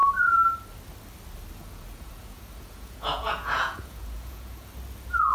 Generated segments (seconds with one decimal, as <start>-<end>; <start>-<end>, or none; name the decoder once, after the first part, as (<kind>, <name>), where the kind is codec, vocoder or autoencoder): 1.6-4.7 (vocoder, Vocos)